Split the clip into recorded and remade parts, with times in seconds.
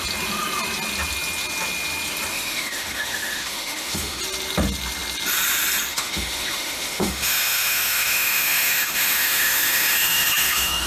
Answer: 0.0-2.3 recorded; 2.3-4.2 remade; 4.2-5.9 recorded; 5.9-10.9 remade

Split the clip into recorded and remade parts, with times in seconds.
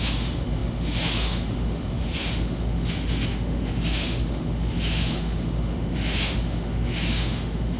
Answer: 0.0-7.8 remade